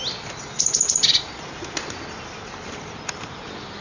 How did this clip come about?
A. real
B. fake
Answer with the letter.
A